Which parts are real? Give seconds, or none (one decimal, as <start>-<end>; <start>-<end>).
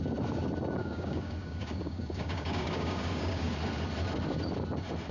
0.0-0.8; 3.5-5.1